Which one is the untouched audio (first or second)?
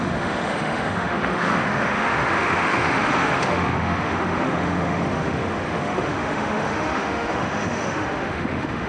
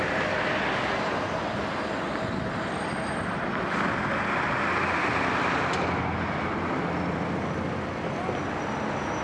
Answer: second